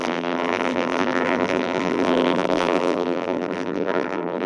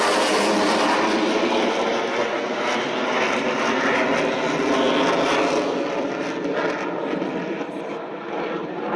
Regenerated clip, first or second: first